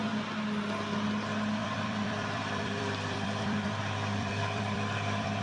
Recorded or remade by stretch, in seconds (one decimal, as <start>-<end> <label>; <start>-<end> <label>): 0.0-1.6 recorded; 1.6-3.7 remade; 3.7-4.2 recorded; 4.2-5.4 remade